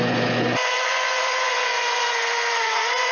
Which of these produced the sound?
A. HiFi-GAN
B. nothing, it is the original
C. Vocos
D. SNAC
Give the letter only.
C